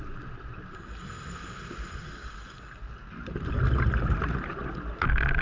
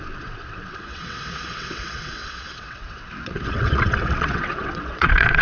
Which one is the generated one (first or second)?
second